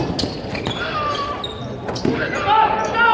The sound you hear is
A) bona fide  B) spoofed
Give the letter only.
A